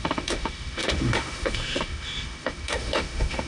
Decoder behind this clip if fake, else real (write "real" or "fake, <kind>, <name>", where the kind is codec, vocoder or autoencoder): fake, autoencoder, DAC-VAE